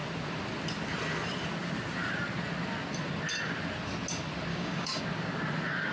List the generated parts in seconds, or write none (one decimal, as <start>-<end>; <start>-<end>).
4.5-5.0